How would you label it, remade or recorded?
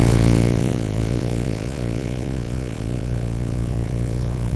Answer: remade